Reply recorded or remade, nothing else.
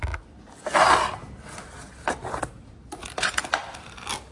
recorded